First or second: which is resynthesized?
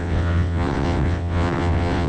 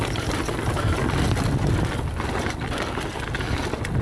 first